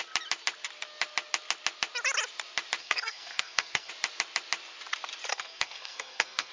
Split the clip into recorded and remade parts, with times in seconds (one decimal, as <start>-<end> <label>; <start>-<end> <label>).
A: 0.0-2.8 recorded; 2.8-3.9 remade; 3.9-5.3 recorded; 5.3-6.5 remade